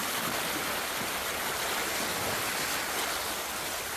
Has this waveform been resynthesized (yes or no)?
no